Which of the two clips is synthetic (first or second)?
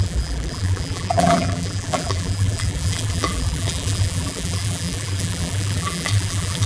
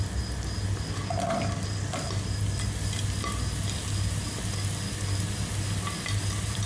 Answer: first